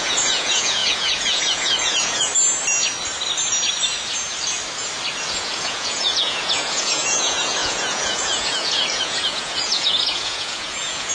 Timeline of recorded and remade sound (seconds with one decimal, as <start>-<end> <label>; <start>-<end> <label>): 0.0-2.3 remade; 2.3-5.2 recorded; 5.2-11.1 remade